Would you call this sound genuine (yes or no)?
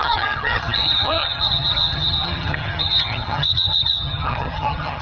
no